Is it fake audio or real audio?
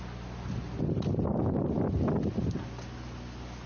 real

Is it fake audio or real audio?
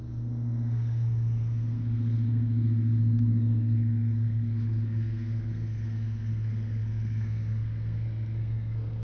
fake